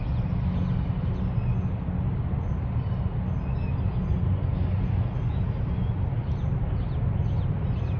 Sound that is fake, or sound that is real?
real